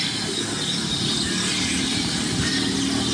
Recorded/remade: recorded